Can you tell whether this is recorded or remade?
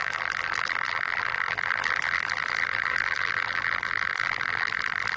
remade